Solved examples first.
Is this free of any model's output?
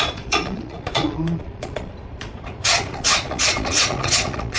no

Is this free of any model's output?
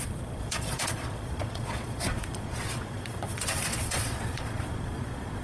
no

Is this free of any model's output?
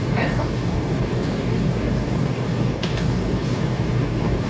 no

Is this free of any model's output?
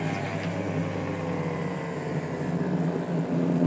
yes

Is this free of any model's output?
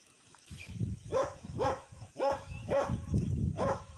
no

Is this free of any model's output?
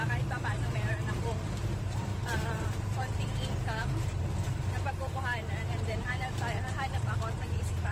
no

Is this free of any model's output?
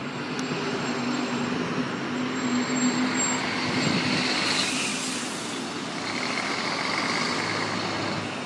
yes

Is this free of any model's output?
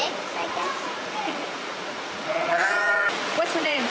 no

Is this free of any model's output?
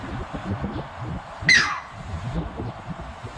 yes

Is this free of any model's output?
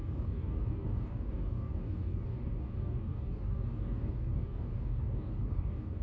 no